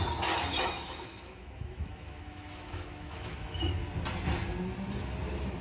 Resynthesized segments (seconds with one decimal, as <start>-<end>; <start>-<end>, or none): 0.5-3.7